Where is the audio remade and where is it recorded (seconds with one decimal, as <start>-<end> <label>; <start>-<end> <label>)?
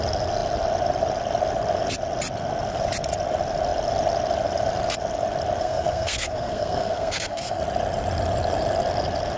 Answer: 0.0-5.6 recorded; 5.6-7.6 remade; 7.6-9.4 recorded